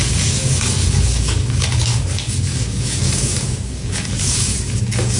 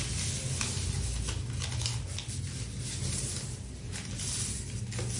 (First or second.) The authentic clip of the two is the second